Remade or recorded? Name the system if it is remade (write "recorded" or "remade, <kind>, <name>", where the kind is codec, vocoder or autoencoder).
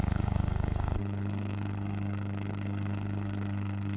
remade, codec, SNAC